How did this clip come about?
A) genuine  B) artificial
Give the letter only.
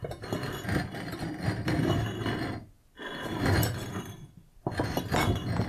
A